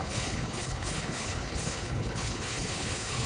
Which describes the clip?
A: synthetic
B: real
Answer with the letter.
A